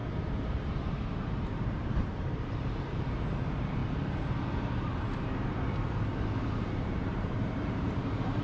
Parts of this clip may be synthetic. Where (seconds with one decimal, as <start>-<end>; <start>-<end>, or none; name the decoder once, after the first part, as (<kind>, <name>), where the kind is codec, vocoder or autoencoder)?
0.0-3.8 (vocoder, BigVGAN v2); 6.4-8.4